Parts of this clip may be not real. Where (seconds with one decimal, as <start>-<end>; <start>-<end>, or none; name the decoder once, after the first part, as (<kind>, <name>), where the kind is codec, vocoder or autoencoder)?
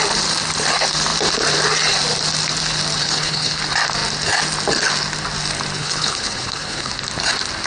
3.0-3.6 (codec, HILCodec); 5.8-6.9